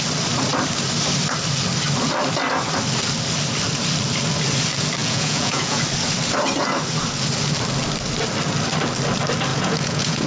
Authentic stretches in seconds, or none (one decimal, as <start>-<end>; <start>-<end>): 0.0-5.0; 5.8-9.5